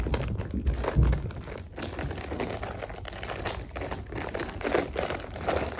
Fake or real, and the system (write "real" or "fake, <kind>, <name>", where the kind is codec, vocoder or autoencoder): real